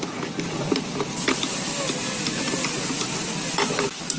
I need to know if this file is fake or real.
real